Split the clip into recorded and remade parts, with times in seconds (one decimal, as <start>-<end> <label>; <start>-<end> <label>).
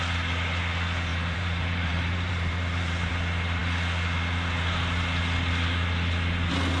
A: 0.0-1.1 recorded; 1.1-3.1 remade; 3.1-6.8 recorded